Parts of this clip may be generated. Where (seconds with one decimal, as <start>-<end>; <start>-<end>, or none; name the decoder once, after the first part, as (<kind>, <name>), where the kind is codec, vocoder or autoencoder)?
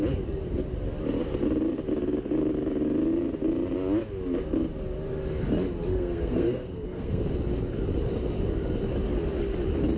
5.9-7.2 (codec, SNAC)